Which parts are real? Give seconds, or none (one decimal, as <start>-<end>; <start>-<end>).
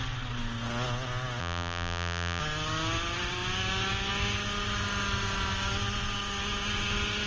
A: 0.0-1.4; 2.4-7.3